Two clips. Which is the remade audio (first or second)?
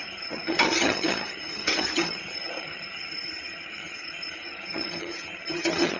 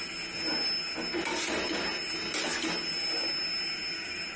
first